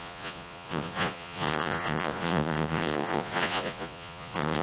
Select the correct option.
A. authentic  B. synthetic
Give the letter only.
B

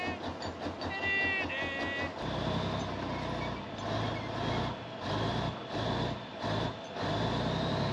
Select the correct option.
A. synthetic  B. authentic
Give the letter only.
B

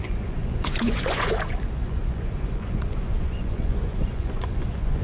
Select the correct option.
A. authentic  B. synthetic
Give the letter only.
B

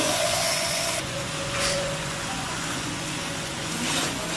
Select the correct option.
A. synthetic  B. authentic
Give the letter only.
A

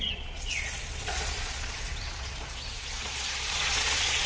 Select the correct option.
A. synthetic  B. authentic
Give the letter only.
A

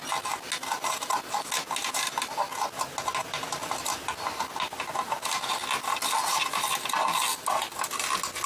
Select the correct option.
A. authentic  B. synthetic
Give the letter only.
A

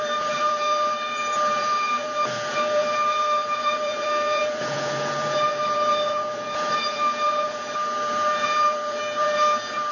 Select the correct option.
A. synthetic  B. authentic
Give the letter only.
A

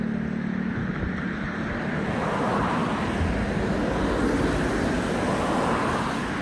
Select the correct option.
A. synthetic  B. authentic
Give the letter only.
B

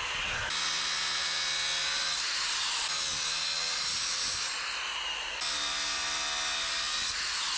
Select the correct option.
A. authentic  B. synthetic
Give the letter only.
A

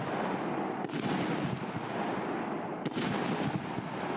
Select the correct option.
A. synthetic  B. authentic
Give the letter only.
B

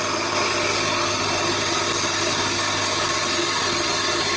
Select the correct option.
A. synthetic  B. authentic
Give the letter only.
B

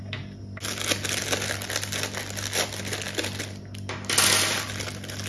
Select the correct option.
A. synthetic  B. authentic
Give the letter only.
B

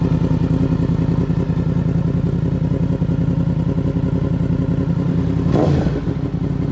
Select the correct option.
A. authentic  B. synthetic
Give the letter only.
A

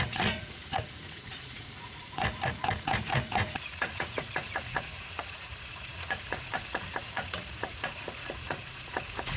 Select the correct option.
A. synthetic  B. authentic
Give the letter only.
A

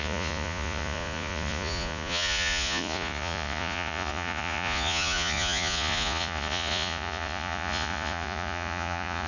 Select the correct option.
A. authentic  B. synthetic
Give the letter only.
B